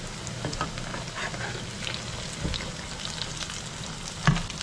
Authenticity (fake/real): real